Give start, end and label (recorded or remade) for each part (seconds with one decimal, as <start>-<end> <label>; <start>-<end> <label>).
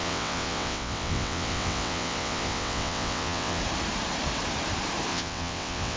0.0-3.6 remade; 3.6-5.1 recorded; 5.1-6.0 remade